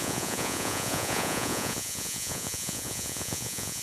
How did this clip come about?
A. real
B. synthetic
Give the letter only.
B